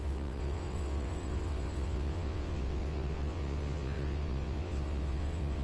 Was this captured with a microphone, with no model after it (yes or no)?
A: no